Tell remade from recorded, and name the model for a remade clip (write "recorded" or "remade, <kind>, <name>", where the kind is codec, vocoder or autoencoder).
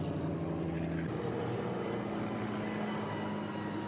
recorded